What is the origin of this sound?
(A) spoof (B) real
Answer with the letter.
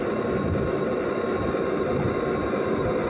B